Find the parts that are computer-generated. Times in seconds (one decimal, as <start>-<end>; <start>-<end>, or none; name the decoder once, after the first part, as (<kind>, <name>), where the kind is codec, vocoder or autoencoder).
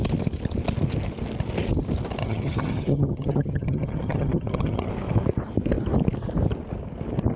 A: 2.2-4.9 (vocoder, HiFi-GAN)